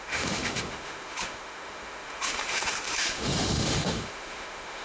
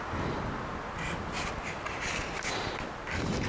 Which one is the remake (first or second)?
first